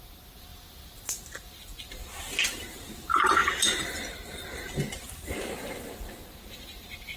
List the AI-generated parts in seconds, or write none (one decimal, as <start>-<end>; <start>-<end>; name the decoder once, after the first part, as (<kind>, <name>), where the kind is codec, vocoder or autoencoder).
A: none